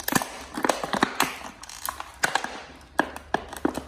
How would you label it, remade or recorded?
recorded